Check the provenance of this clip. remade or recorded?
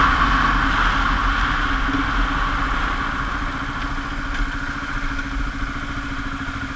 recorded